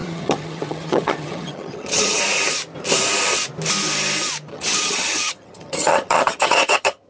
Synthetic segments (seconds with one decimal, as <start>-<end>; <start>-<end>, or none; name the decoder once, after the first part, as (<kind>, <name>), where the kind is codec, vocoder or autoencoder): 0.0-2.2 (vocoder, HiFi-GAN); 4.5-7.1